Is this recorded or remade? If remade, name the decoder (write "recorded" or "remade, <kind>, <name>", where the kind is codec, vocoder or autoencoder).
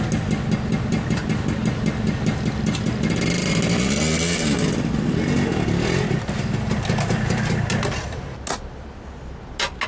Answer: recorded